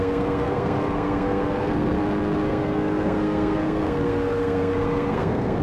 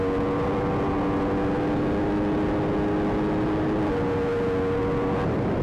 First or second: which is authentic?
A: second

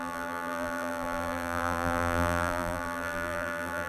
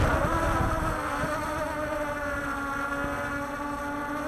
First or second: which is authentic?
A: second